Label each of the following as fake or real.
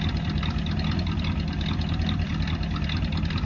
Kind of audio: real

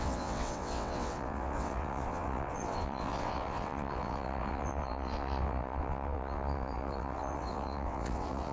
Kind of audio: fake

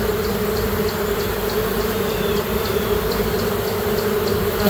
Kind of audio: real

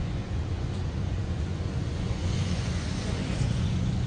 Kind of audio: fake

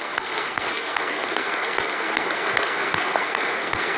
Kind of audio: fake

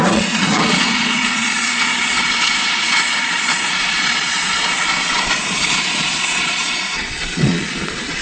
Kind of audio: fake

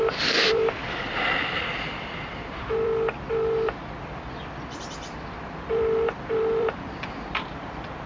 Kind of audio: fake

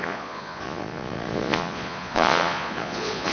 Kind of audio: fake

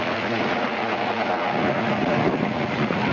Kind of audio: fake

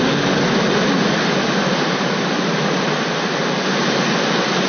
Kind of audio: real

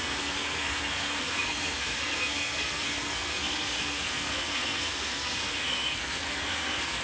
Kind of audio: fake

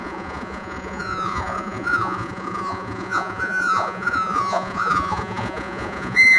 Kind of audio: fake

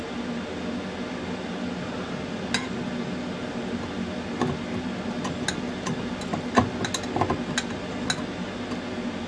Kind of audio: real